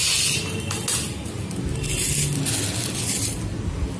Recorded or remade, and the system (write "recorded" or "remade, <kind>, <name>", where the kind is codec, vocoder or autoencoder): recorded